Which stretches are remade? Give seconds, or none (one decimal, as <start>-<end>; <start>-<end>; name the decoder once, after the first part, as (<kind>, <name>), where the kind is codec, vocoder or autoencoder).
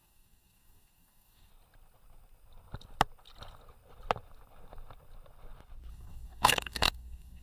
0.0-1.5 (codec, DAC); 5.9-7.4